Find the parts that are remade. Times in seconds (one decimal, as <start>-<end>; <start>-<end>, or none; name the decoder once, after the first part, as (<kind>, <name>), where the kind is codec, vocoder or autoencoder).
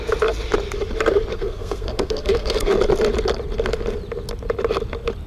1.3-2.8 (codec, SNAC)